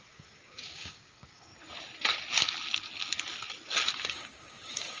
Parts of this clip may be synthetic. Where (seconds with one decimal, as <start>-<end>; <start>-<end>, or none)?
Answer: 0.0-1.5; 4.0-5.0